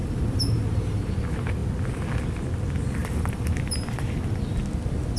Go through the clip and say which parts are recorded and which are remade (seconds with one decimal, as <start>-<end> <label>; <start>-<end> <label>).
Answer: 0.0-1.1 remade; 1.1-3.0 recorded; 3.0-4.6 remade; 4.6-5.2 recorded